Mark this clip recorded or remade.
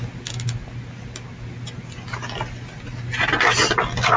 recorded